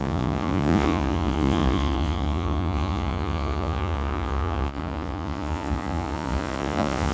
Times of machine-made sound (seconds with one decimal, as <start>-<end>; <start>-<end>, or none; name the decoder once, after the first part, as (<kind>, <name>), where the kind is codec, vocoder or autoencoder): 0.0-7.1 (vocoder, Vocos)